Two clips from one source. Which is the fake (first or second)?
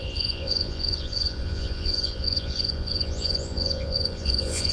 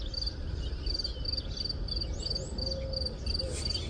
first